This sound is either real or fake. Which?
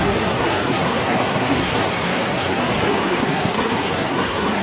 fake